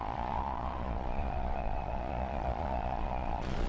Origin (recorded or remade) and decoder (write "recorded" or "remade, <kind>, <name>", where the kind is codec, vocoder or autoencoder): remade, vocoder, Vocos